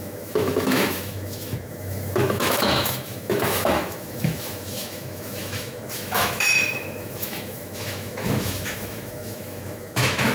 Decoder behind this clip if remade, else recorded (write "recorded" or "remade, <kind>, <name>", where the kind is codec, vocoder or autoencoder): remade, autoencoder, DAC-VAE